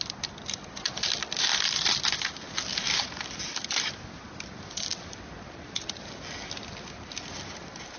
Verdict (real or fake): real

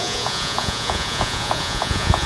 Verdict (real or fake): fake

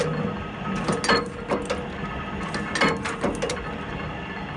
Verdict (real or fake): real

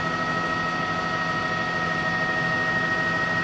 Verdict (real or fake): real